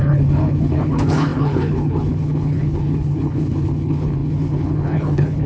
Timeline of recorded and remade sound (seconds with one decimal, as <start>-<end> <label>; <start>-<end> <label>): 0.0-5.5 remade